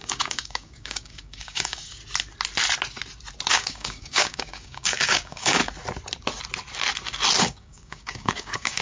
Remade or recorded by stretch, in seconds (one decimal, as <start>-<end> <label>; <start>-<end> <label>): 0.0-2.0 remade; 2.0-3.5 recorded; 3.5-5.6 remade; 5.6-7.4 recorded; 7.4-8.8 remade